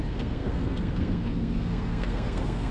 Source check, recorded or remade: remade